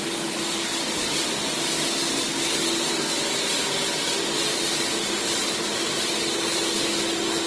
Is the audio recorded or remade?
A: recorded